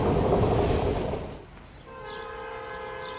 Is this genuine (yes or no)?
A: yes